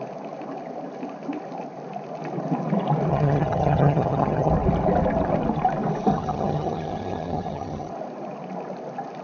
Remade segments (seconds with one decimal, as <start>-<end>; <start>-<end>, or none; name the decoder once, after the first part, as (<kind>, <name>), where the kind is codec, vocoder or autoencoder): 3.1-4.5 (vocoder, HiFi-GAN); 6.1-7.9

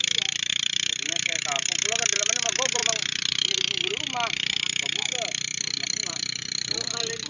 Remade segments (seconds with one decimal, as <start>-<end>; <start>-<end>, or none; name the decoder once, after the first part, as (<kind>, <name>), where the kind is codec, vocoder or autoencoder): none